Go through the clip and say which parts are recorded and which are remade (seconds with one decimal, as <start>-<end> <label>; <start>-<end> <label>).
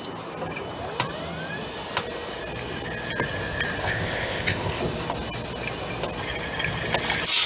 0.0-3.8 recorded; 3.8-4.8 remade; 4.8-7.5 recorded